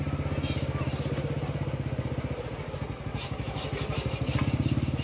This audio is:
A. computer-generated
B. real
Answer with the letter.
B